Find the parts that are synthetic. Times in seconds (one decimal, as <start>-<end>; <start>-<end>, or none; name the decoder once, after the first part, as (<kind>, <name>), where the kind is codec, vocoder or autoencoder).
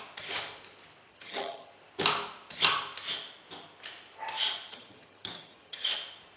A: 1.1-1.7 (vocoder, HiFi-GAN); 4.7-5.9